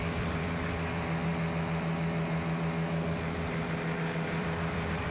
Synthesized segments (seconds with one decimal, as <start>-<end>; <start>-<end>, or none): 0.0-1.3; 4.4-5.1